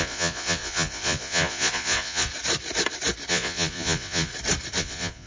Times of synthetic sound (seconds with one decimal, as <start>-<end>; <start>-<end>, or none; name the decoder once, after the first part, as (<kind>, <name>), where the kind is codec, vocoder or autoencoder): 0.0-2.3 (vocoder, Vocos); 3.3-4.3; 4.8-5.3